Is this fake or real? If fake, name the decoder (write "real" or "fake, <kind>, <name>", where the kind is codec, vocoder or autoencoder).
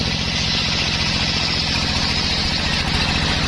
real